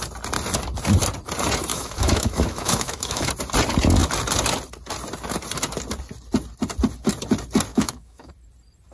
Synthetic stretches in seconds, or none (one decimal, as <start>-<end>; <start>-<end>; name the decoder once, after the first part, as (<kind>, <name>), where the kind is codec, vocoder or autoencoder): 1.7-3.3 (autoencoder, DAC-VAE); 7.7-8.3